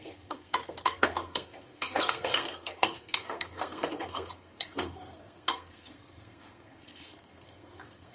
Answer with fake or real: fake